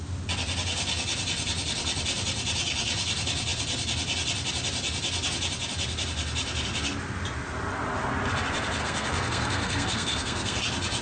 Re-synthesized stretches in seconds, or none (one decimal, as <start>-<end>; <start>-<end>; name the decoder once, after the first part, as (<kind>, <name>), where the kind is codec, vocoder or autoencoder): 8.8-10.6 (codec, SNAC)